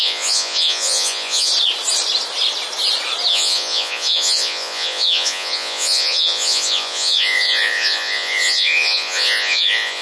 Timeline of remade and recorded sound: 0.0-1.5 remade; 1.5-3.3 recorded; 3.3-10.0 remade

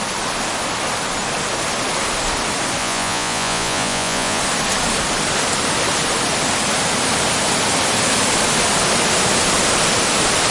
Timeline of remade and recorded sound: 0.0-2.8 recorded; 2.8-4.4 remade; 4.4-10.5 recorded

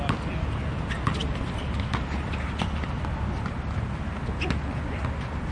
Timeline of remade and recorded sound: 0.0-5.5 recorded

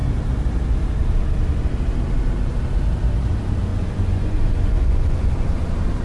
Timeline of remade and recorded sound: 0.0-3.7 recorded; 3.7-5.3 remade; 5.3-6.0 recorded

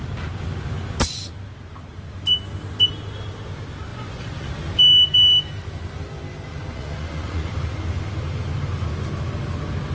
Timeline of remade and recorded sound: 0.0-3.9 recorded; 3.9-4.5 remade; 4.5-6.5 recorded; 6.5-7.5 remade; 7.5-9.9 recorded

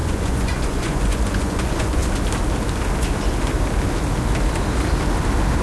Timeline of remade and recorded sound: 0.0-2.0 remade; 2.0-5.6 recorded